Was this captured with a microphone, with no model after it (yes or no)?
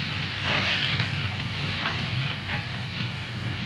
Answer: no